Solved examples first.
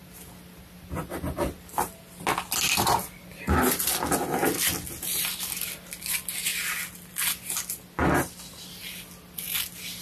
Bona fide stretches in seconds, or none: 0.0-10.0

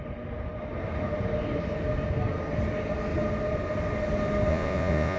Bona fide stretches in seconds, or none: 0.0-4.5